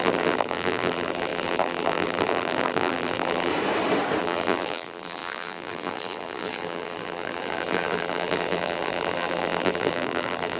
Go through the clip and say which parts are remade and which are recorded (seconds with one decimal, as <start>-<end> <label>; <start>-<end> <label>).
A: 0.0-3.5 remade; 3.5-4.2 recorded; 4.2-10.6 remade